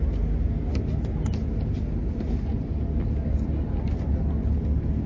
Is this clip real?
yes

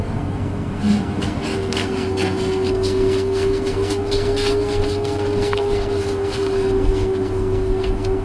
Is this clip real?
no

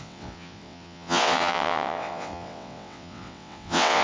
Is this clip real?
no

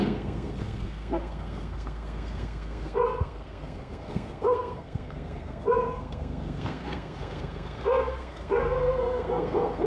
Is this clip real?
no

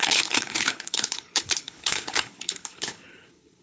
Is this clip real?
no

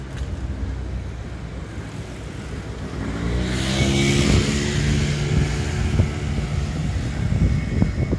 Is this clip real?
yes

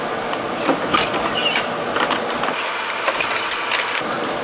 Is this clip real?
yes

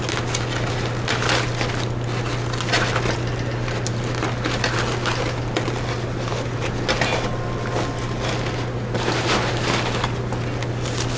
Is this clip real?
yes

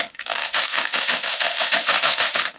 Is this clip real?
no